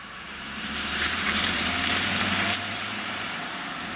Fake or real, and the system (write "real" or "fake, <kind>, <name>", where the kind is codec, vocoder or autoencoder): fake, vocoder, BigVGAN v2